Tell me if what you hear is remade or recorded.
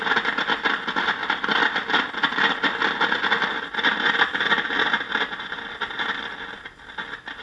recorded